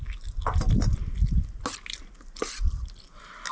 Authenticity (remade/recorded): recorded